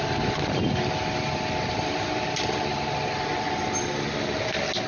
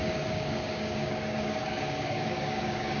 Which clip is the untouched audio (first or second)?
first